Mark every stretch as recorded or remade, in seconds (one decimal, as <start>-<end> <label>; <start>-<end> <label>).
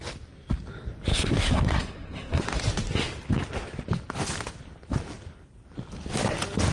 0.0-1.1 recorded; 1.1-2.4 remade; 2.4-6.7 recorded